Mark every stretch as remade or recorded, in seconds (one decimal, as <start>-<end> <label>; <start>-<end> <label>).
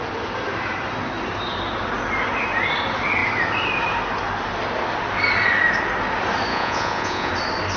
0.0-6.5 recorded; 6.5-7.3 remade; 7.3-7.8 recorded